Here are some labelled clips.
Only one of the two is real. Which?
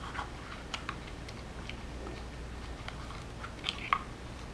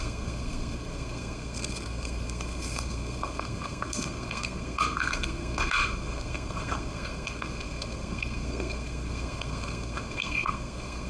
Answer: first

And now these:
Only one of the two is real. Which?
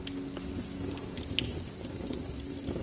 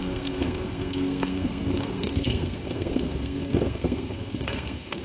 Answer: first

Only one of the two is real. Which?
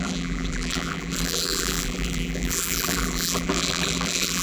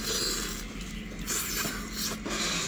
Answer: second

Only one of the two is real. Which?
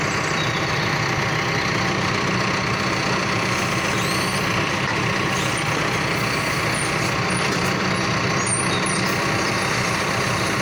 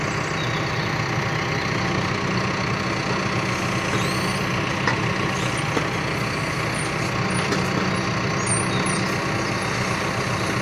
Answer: second